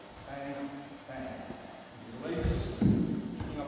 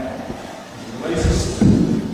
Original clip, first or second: first